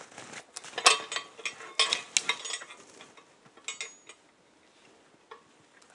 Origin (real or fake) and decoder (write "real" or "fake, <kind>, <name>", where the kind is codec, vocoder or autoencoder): real